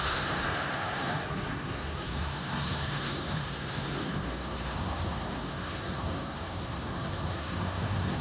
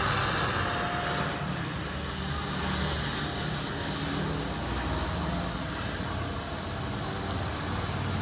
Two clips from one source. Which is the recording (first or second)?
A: second